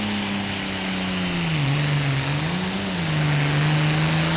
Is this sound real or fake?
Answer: real